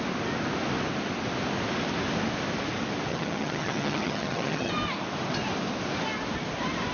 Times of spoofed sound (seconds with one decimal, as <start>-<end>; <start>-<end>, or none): 3.1-4.7